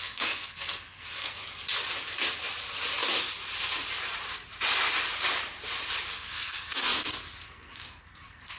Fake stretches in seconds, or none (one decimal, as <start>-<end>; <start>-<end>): 0.0-1.4; 6.1-8.6